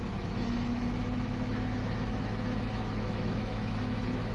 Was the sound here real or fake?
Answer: fake